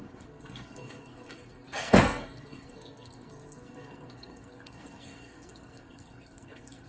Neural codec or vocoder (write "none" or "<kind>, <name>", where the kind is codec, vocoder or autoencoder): codec, SNAC